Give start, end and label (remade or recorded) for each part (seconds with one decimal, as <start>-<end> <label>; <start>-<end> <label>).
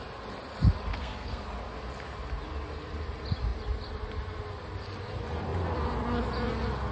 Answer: 0.0-0.9 recorded; 0.9-1.4 remade; 1.4-6.9 recorded